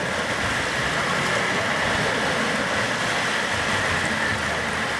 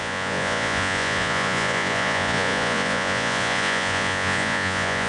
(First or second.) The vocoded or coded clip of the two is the second